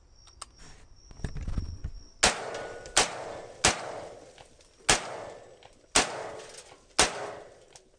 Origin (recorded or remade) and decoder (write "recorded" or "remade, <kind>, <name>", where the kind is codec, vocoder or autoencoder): recorded